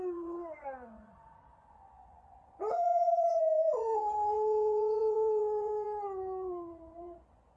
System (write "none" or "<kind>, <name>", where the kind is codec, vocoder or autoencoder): vocoder, Vocos